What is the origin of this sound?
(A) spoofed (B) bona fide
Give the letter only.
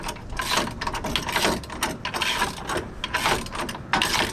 B